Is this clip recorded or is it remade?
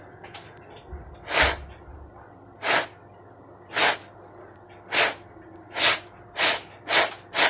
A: recorded